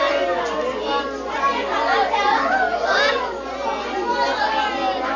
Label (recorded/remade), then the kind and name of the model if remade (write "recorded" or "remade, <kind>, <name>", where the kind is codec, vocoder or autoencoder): recorded